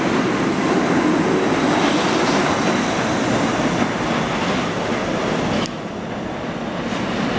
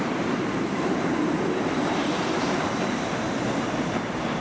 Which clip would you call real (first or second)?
first